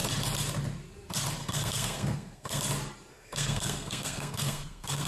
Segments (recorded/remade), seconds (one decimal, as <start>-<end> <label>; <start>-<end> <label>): 0.0-1.4 recorded; 1.4-2.6 remade; 2.6-3.1 recorded; 3.1-5.1 remade